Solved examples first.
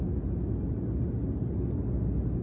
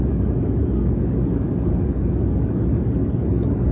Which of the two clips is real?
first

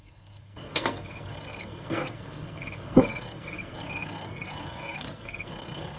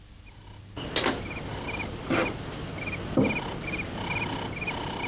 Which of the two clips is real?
second